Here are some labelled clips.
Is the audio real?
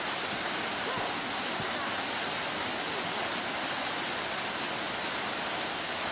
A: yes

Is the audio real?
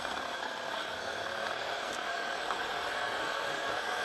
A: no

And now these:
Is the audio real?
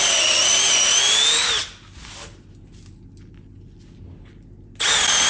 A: yes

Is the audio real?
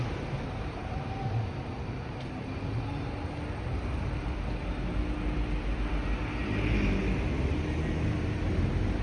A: yes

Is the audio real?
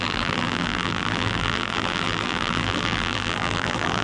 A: no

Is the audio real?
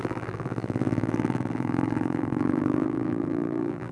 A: no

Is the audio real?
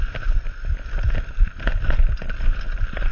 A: yes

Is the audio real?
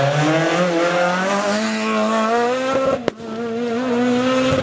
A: yes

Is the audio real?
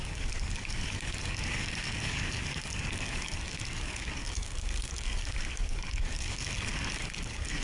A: no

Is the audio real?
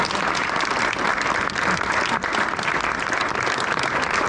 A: yes